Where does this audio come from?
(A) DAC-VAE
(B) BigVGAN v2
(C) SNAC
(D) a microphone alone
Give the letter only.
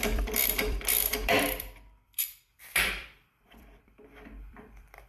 B